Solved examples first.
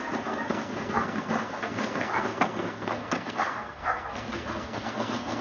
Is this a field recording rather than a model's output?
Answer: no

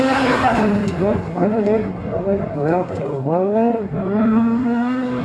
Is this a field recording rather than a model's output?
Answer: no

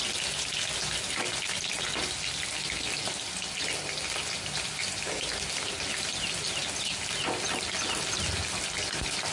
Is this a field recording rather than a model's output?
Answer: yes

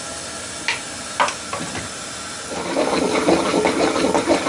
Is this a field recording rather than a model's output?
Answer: yes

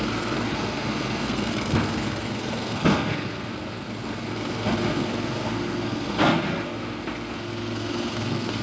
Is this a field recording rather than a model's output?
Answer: no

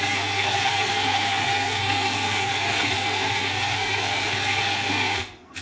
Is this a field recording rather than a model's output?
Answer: no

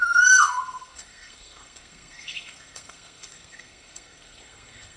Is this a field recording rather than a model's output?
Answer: no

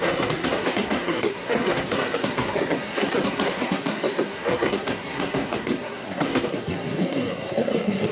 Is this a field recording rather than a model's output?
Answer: no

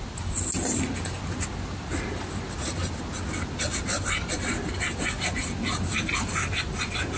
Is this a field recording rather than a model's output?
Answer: yes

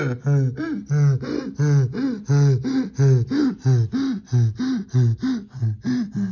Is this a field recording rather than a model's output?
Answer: yes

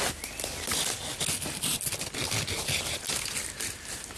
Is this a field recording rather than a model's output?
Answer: yes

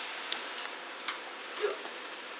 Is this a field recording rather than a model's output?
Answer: yes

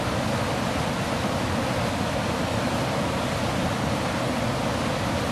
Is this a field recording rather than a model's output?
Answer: yes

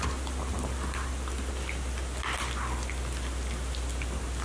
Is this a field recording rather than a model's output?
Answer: yes